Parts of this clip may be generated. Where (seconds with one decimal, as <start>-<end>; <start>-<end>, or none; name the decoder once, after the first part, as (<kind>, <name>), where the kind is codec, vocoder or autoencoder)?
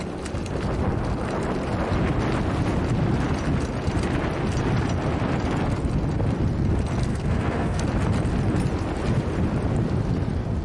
7.1-7.8 (codec, SNAC)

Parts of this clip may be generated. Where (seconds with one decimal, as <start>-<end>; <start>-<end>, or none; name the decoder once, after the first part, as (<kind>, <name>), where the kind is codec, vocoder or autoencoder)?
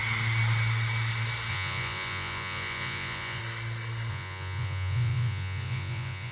1.5-3.4 (vocoder, Vocos); 4.1-6.3